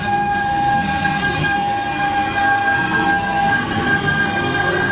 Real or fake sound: fake